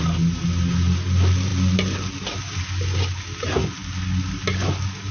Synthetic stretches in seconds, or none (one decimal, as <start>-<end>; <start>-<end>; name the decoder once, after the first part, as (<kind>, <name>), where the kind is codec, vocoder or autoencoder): none